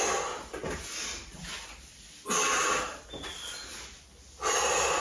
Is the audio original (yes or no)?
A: yes